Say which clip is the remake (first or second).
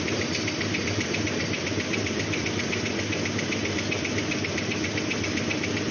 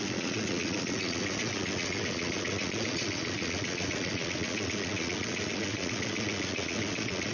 second